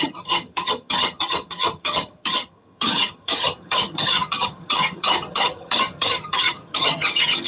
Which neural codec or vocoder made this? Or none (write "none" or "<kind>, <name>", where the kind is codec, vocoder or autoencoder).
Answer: vocoder, HiFi-GAN